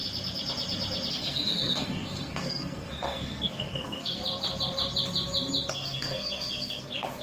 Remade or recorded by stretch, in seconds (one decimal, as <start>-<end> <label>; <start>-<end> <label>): 0.0-1.1 recorded; 1.1-4.2 remade; 4.2-5.7 recorded; 5.7-7.2 remade